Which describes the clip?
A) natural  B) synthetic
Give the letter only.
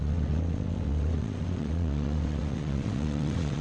B